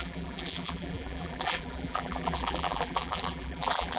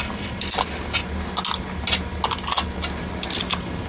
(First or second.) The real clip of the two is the second